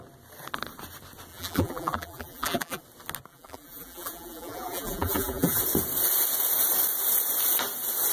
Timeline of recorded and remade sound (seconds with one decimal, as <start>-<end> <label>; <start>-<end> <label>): 0.0-1.3 recorded; 1.3-2.8 remade; 2.8-3.3 recorded; 3.3-5.6 remade; 5.6-8.1 recorded